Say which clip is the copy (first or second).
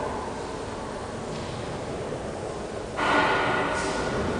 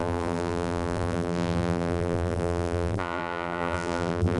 second